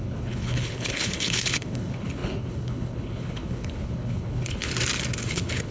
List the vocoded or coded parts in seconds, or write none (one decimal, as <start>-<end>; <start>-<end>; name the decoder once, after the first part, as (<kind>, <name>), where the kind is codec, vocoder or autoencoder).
0.0-4.7 (codec, HILCodec); 5.2-5.7